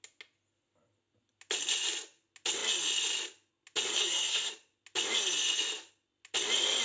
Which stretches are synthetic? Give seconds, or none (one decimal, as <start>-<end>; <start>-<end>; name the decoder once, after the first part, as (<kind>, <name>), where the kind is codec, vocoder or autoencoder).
4.0-4.5 (codec, SNAC)